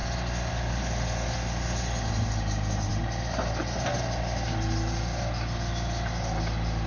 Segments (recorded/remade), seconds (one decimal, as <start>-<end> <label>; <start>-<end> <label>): 0.0-6.9 recorded